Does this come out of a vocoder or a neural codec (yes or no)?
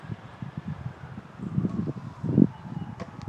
no